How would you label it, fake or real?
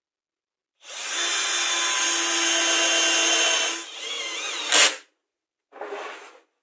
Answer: real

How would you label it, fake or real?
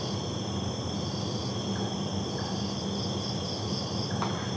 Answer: real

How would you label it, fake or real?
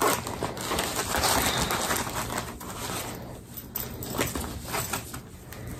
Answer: real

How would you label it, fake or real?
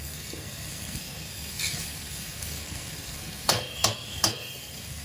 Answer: fake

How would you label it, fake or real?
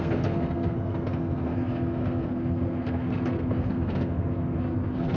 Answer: fake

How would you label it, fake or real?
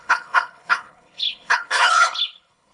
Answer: fake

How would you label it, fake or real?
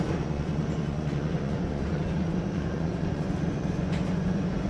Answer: fake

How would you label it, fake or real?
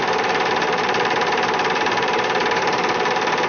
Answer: fake